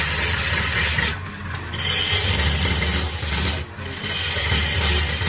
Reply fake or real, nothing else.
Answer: real